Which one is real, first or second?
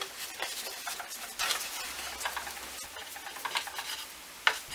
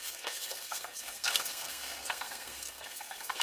first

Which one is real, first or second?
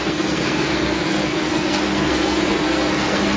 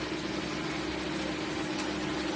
second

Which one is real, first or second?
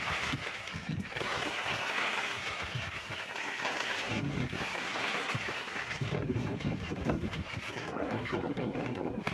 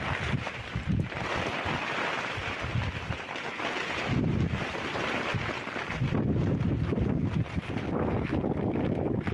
second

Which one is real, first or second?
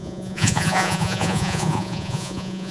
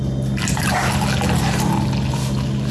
second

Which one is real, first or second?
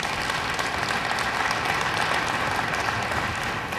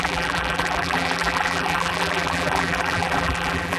first